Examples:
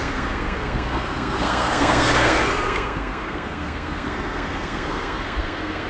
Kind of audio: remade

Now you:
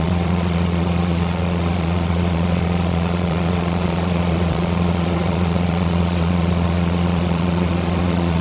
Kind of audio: remade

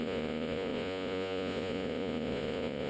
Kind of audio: remade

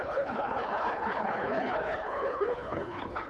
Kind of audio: remade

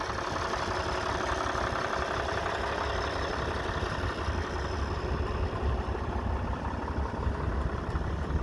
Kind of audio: recorded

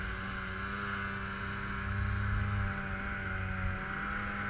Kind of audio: recorded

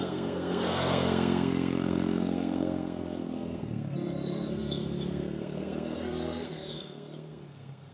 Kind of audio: remade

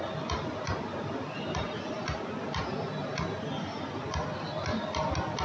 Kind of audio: recorded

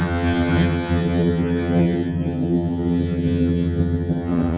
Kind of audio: remade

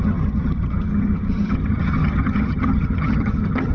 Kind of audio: remade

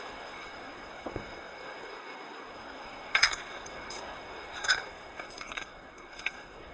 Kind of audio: remade